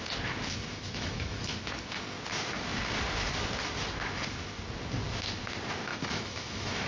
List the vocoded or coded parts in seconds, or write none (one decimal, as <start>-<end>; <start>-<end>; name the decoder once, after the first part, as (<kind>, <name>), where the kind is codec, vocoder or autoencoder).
0.7-1.5 (autoencoder, DAC-VAE); 5.9-6.9